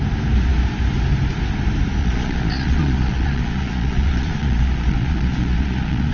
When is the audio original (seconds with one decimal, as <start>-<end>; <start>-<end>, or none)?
0.0-2.0